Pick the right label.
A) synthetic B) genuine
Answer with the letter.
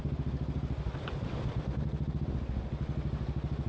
B